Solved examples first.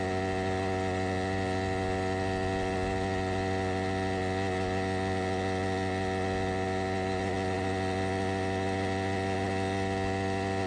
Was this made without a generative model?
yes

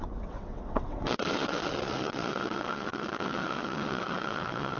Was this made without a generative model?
no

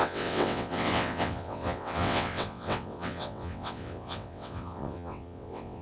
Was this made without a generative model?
no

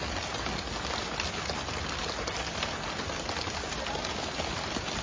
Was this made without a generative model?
yes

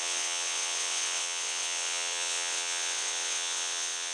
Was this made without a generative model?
no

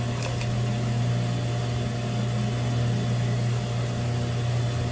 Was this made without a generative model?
yes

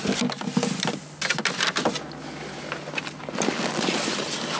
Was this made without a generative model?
yes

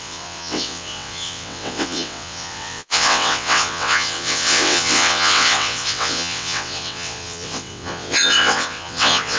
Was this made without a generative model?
no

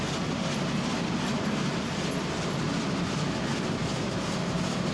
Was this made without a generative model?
yes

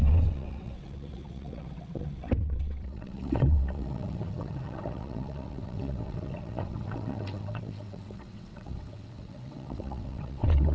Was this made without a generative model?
no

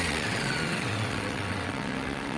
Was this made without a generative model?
no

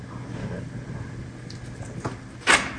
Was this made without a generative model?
yes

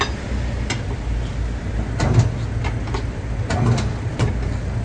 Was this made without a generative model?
yes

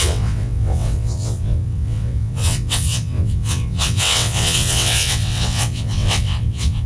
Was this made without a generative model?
no